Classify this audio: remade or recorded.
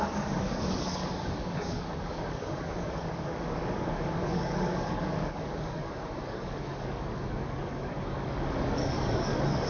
remade